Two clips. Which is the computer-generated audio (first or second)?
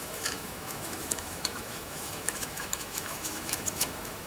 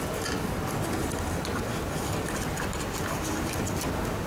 first